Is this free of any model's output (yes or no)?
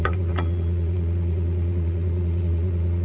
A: no